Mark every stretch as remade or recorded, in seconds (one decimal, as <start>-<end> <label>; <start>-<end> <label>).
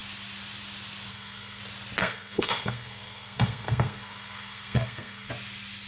0.0-1.1 recorded; 1.1-1.6 remade; 1.6-2.0 recorded; 2.0-5.3 remade; 5.3-5.9 recorded